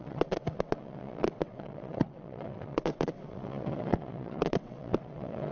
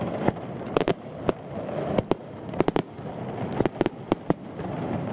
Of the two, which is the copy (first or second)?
first